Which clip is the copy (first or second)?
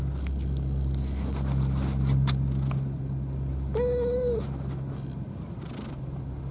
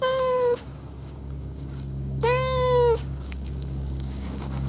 second